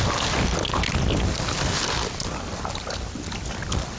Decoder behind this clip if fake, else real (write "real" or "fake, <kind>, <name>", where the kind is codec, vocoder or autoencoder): real